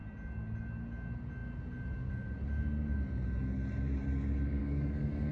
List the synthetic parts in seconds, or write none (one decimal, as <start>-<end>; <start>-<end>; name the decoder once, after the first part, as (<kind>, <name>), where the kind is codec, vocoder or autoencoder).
4.6-5.3 (codec, DAC)